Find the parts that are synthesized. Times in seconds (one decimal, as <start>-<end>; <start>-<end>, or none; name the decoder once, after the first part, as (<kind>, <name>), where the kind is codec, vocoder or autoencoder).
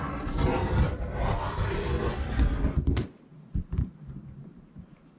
3.3-4.2 (vocoder, BigVGAN v2)